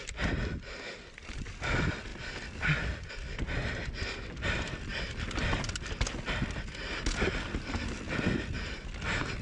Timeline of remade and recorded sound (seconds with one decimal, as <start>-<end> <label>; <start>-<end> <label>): 0.0-9.4 recorded